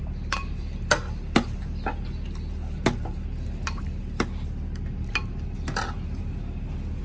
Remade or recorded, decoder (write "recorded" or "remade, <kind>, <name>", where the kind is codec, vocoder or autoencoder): recorded